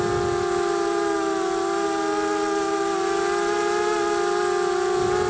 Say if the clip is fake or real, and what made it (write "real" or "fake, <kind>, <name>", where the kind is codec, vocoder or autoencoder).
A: real